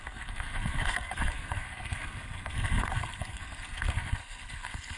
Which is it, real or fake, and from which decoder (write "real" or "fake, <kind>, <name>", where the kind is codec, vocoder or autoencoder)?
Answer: fake, codec, SNAC